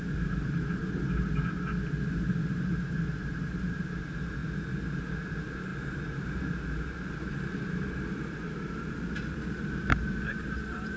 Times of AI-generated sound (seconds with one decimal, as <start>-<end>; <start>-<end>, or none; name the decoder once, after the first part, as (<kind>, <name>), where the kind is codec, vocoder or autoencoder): 0.0-0.8 (vocoder, BigVGAN v2); 2.3-4.4; 5.0-5.7; 7.6-11.0